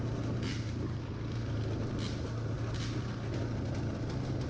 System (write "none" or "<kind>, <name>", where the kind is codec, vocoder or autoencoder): none